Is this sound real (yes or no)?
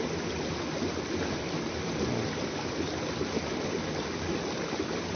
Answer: yes